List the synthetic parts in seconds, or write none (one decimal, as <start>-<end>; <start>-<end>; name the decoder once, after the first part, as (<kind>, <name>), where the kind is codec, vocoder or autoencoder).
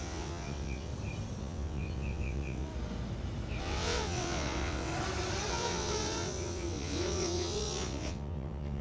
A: 0.0-0.9 (vocoder, WaveNeXt); 1.4-2.7; 3.6-4.9; 5.5-8.8